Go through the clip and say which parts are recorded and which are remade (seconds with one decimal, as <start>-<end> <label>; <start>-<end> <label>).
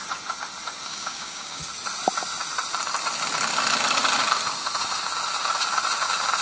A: 0.0-0.9 recorded; 0.9-1.6 remade; 1.6-6.4 recorded